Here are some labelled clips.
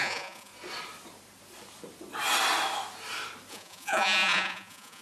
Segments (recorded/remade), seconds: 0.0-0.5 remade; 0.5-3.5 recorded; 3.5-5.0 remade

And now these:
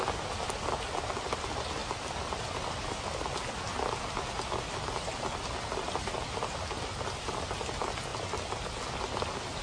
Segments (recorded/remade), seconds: 0.0-9.6 recorded

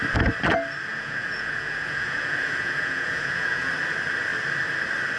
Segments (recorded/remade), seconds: 0.0-0.9 recorded; 0.9-3.7 remade; 3.7-5.2 recorded

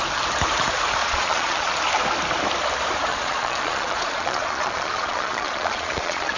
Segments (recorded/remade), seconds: 0.0-1.0 recorded; 1.0-1.7 remade; 1.7-3.1 recorded; 3.1-6.4 remade

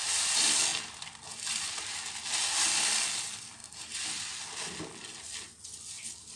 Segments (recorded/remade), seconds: 0.0-6.4 recorded